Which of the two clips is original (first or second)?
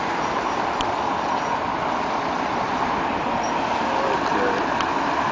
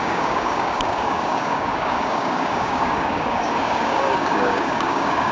first